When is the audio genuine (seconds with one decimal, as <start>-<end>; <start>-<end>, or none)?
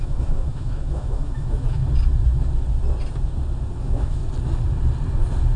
1.8-3.8; 4.2-5.6